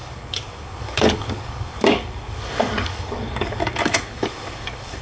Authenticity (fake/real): fake